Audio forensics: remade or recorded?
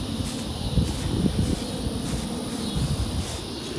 recorded